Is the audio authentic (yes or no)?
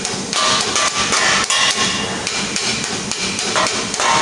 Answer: yes